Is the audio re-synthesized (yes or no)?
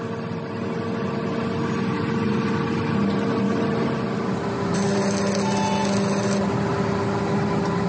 no